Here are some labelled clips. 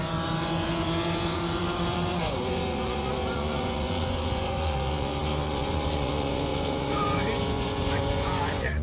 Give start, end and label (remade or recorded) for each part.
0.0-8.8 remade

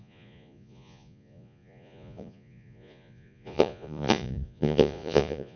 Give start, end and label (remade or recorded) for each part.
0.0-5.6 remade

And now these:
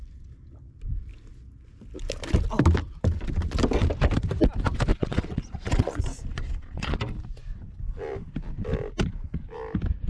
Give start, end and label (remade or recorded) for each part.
0.0-4.9 recorded; 4.9-7.0 remade; 7.0-10.1 recorded

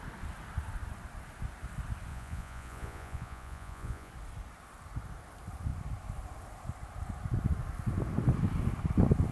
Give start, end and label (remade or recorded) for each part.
0.0-2.1 recorded; 2.1-4.1 remade; 4.1-9.3 recorded